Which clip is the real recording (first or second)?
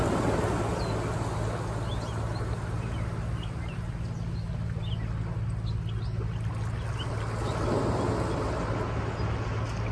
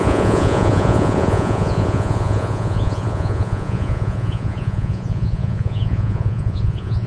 first